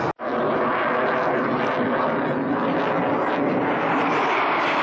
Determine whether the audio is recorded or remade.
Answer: recorded